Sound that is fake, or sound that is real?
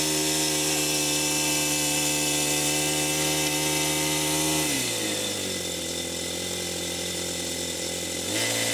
real